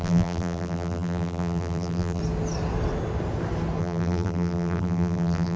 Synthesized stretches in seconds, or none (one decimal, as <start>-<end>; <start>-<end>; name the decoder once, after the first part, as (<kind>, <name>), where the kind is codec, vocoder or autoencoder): 0.0-2.2 (vocoder, BigVGAN v2); 3.8-5.6